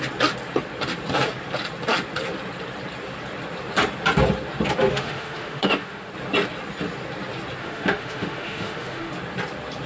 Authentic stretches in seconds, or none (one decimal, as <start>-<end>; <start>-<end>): 0.0-4.9; 6.1-7.6; 9.1-9.9